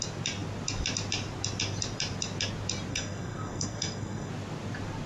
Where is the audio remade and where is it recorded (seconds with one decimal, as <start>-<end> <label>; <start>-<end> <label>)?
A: 0.0-2.9 recorded; 2.9-4.3 remade; 4.3-5.1 recorded